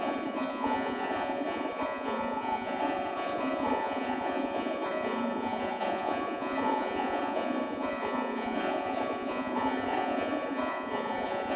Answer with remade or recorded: remade